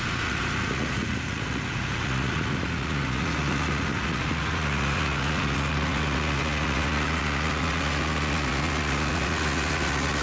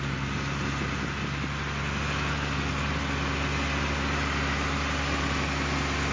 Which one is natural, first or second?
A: second